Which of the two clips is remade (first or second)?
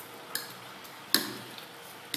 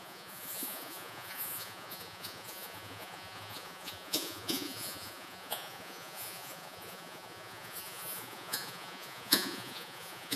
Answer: second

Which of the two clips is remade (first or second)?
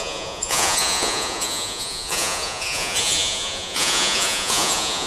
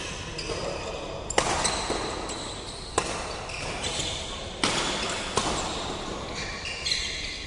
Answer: first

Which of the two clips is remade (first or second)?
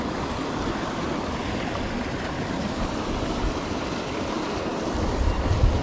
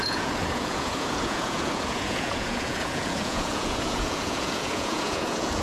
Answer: second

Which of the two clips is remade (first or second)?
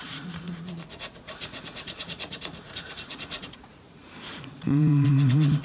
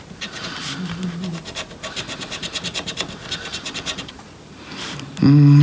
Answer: first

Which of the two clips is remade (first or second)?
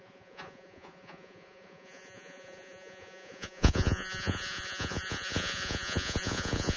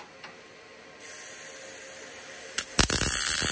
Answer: first